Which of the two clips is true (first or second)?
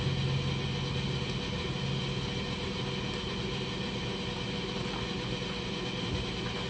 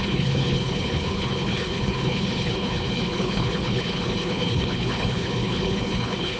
first